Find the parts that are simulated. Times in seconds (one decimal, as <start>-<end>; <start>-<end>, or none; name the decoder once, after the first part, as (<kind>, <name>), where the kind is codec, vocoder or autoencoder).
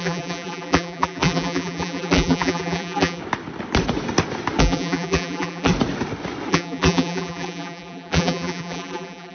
0.0-3.2 (vocoder, BigVGAN v2); 4.6-5.7; 6.5-9.3